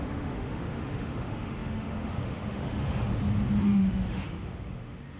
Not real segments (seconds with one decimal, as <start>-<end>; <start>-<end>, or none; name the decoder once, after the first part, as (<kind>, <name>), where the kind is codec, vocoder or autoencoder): 0.0-3.1 (autoencoder, DAC-VAE); 3.6-5.2